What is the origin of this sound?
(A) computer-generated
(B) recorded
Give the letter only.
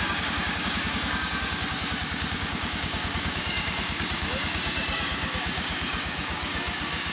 A